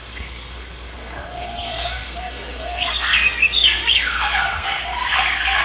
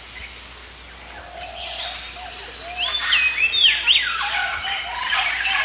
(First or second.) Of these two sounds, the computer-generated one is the first